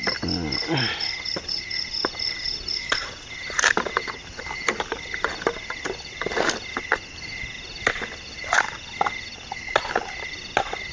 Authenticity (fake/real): real